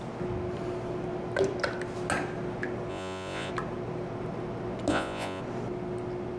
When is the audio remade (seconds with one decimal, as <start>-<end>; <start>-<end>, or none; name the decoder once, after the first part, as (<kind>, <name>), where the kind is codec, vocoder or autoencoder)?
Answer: 2.9-3.5 (vocoder, Vocos); 4.9-5.4

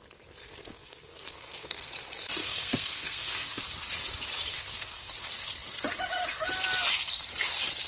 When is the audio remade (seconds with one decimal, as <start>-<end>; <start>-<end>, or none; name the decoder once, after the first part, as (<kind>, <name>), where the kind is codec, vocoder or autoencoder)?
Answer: 0.4-1.9 (codec, SNAC); 2.4-3.6; 4.5-5.1

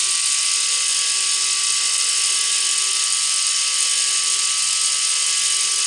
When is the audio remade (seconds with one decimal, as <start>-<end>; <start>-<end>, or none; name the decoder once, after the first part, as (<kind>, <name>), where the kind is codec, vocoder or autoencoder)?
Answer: none

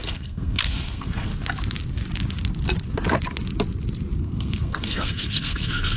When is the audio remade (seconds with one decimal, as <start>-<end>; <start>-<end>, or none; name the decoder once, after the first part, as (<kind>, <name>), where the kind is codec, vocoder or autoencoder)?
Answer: 0.0-1.3 (codec, SNAC); 4.2-6.0

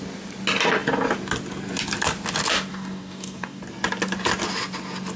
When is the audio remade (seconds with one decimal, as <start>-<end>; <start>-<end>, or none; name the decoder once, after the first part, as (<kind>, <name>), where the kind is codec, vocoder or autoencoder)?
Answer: 2.7-3.6 (codec, DAC)

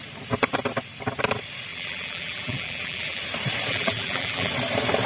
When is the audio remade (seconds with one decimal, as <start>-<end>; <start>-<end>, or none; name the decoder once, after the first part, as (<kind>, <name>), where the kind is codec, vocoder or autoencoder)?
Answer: 1.7-3.2 (vocoder, BigVGAN v2); 3.7-4.5

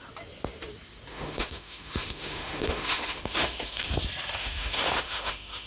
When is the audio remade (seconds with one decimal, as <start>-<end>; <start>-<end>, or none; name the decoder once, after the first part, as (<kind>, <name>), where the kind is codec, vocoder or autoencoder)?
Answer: 1.1-3.9 (autoencoder, DAC-VAE); 4.4-5.7

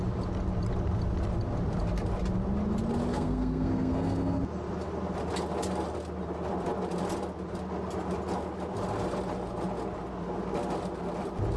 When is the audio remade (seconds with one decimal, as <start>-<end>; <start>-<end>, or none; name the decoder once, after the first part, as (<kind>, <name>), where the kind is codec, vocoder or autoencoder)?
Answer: 3.1-4.4 (codec, SNAC)